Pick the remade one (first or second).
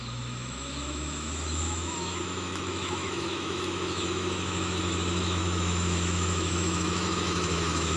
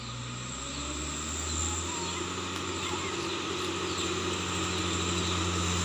first